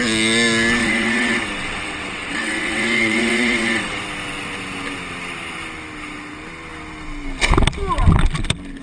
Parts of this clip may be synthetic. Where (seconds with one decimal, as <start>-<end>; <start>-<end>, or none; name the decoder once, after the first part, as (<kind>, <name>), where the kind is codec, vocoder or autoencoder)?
0.8-4.0 (vocoder, WaveNeXt)